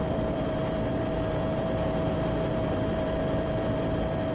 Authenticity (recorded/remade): remade